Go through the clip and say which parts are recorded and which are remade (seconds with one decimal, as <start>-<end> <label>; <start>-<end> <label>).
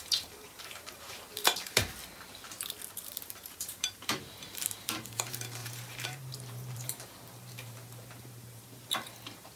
0.0-2.0 remade; 2.0-3.1 recorded; 3.1-9.6 remade